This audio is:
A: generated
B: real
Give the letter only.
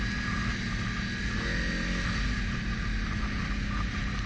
B